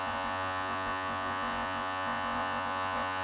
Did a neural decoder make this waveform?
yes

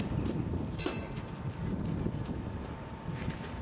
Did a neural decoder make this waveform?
no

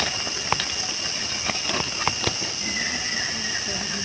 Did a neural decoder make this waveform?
no